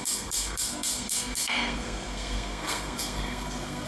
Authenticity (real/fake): fake